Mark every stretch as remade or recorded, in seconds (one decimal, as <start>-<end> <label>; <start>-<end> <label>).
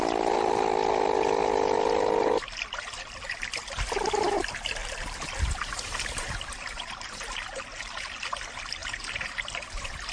0.0-4.8 recorded; 4.8-8.3 remade; 8.3-8.8 recorded; 8.8-9.3 remade; 9.3-10.1 recorded